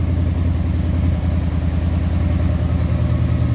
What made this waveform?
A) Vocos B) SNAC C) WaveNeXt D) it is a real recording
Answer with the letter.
D